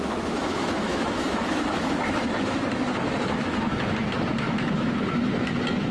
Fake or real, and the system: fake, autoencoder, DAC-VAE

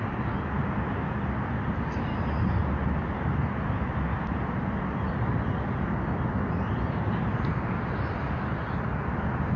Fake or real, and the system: real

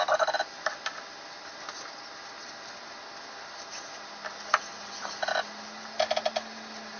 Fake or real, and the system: real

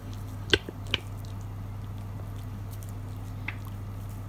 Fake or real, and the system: real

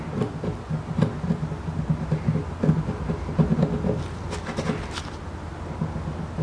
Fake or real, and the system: real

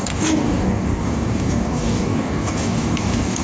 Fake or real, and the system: fake, codec, DAC